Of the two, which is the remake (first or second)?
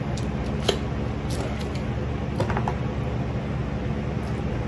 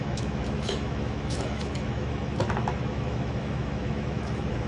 second